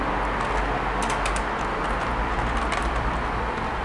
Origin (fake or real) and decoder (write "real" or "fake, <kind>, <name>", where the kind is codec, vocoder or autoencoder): real